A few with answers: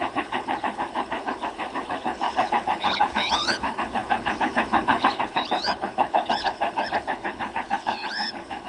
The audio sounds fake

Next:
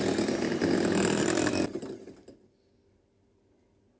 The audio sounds real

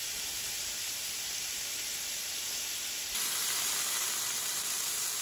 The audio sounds fake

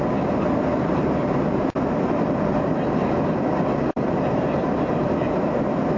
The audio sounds real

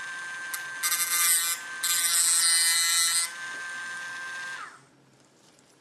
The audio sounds real